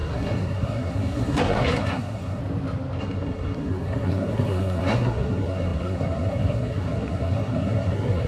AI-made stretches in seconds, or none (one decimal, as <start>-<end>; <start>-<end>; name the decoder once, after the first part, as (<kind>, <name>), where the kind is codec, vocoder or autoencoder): 0.0-2.4 (codec, SNAC); 3.0-8.3